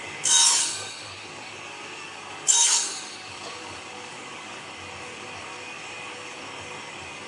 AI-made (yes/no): yes